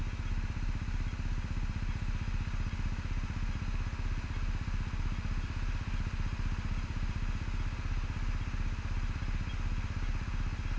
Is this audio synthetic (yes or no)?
no